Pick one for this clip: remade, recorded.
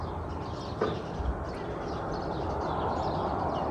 recorded